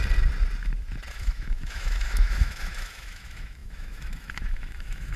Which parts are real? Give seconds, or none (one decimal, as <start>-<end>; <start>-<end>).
0.0-1.1